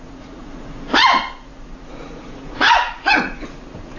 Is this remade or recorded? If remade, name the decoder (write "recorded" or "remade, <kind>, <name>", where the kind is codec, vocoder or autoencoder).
remade, vocoder, Vocos